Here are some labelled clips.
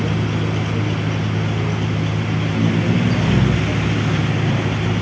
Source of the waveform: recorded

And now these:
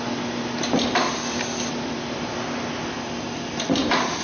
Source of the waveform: recorded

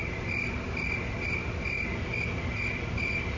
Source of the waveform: recorded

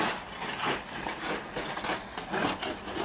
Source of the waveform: recorded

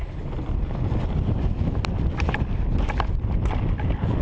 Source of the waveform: recorded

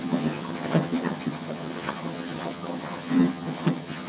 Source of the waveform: remade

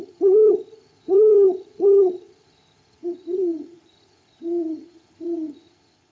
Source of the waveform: remade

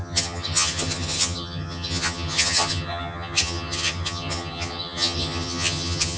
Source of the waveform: remade